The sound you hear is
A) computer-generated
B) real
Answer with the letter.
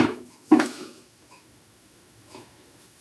A